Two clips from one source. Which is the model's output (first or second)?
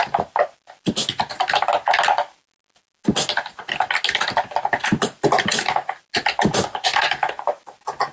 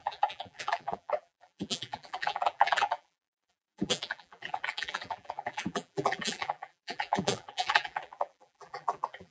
second